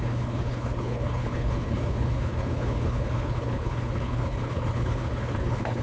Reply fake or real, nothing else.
fake